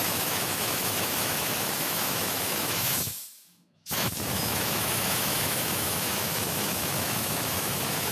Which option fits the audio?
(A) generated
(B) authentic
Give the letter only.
A